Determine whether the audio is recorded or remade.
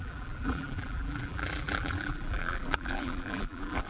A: remade